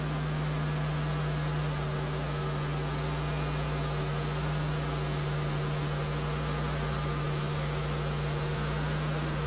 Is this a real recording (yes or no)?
yes